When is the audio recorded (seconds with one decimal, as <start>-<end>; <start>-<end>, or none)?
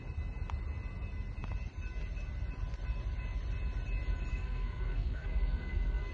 0.0-4.3